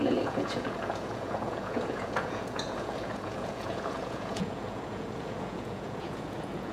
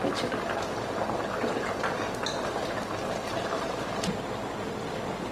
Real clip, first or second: second